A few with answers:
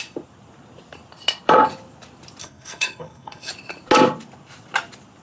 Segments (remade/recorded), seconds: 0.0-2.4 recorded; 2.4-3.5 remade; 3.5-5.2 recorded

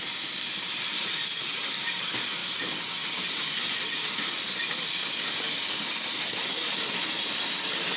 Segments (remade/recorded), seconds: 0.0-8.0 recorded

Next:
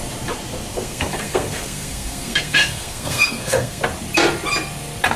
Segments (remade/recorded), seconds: 0.0-0.7 recorded; 0.7-3.8 remade; 3.8-5.2 recorded

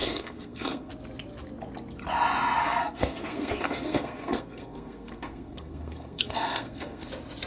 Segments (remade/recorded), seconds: 0.0-0.9 remade; 0.9-2.6 recorded; 2.6-7.1 remade; 7.1-7.5 recorded

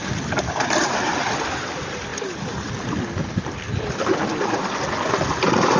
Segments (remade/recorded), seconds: 0.0-5.8 recorded

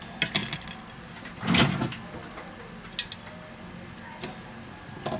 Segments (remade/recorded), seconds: 0.0-5.2 recorded

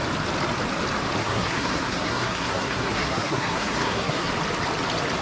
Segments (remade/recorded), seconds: 0.0-1.2 recorded; 1.2-4.3 remade; 4.3-5.2 recorded